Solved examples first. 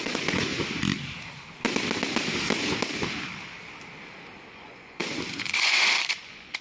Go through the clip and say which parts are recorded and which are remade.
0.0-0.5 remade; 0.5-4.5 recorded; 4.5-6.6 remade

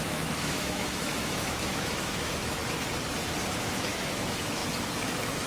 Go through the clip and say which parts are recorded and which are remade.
0.0-2.6 remade; 2.6-3.5 recorded; 3.5-5.5 remade

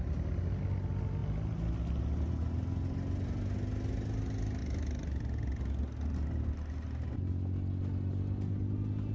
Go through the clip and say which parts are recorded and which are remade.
0.0-9.1 recorded